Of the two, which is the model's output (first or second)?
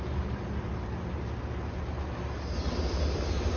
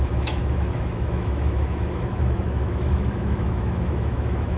second